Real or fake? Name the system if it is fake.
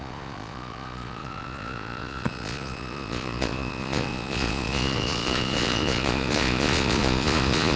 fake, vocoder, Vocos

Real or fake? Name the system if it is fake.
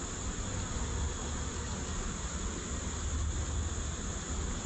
real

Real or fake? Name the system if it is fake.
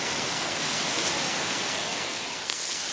fake, codec, SNAC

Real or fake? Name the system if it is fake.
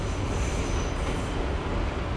real